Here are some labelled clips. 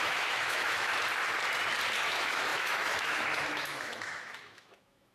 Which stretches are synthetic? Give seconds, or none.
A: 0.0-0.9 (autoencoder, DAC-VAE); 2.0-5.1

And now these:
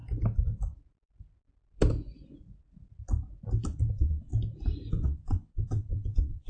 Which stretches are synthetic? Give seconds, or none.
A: 3.9-4.3 (vocoder, WaveNeXt); 4.9-6.5